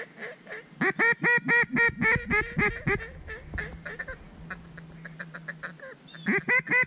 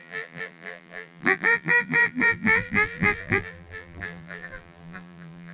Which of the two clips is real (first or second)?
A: first